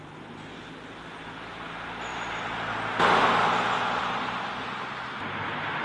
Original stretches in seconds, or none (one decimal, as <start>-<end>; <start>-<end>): 0.0-5.8